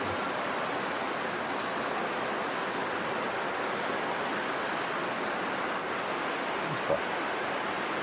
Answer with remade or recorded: recorded